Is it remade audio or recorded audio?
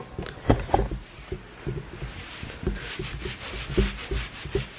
recorded